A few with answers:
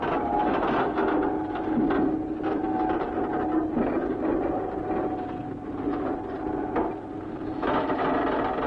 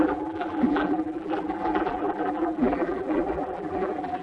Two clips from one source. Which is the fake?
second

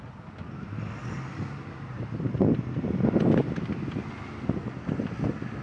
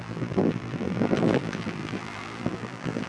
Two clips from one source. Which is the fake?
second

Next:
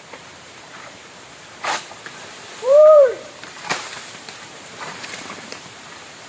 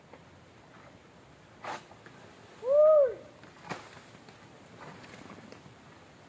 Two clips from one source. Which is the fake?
first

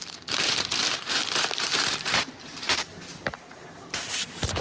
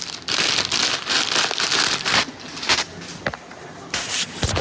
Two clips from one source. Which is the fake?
first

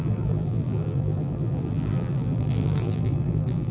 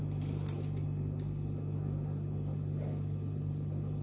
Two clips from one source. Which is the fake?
first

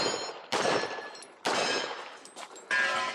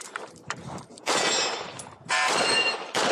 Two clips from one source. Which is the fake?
second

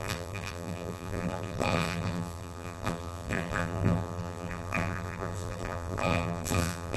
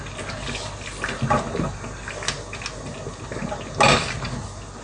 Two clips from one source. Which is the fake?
first